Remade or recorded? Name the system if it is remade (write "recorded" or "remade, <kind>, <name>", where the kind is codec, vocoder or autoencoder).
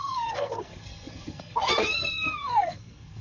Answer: remade, codec, SNAC